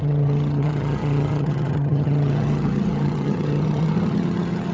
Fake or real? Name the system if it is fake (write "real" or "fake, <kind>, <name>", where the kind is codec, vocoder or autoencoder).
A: fake, vocoder, HiFi-GAN